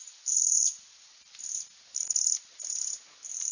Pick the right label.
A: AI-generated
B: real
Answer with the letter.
B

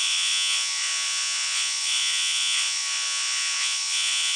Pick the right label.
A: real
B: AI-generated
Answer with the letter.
B